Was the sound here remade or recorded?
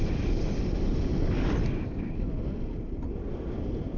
recorded